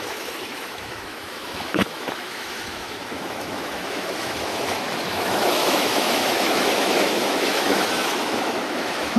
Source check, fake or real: fake